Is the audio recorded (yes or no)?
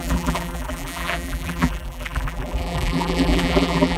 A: no